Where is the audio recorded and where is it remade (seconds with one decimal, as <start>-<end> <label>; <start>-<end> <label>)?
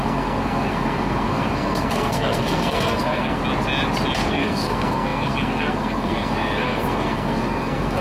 0.0-3.4 remade; 3.4-4.3 recorded; 4.3-8.0 remade